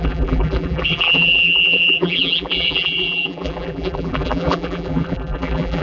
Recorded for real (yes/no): no